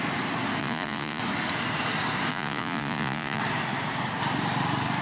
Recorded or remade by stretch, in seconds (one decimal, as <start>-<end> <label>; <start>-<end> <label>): 0.0-0.6 recorded; 0.6-1.2 remade; 1.2-2.3 recorded; 2.3-3.4 remade; 3.4-5.0 recorded